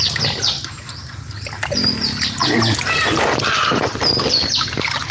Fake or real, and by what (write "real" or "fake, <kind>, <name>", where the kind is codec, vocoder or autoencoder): real